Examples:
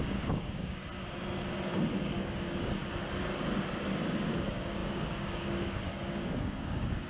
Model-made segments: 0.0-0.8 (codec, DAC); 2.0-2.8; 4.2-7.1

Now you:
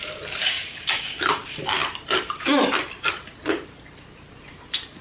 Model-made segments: 0.4-1.2 (codec, DAC)

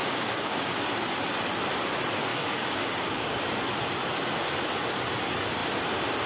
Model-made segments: 0.0-0.7 (codec, DAC); 2.3-3.4

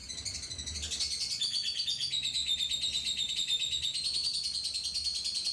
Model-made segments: none

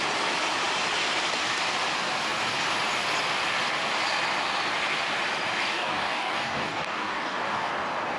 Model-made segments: 5.7-7.7 (codec, DAC)

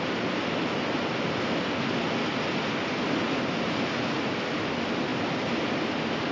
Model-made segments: none